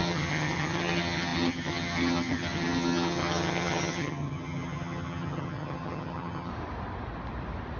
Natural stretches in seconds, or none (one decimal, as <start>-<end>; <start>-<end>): 6.5-7.8